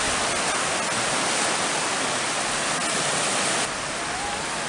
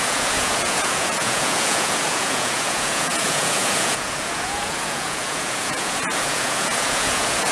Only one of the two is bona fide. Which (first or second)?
first